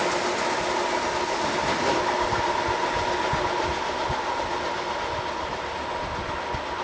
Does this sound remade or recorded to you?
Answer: recorded